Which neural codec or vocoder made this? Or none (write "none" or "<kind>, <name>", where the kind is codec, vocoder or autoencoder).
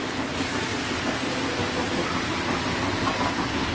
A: none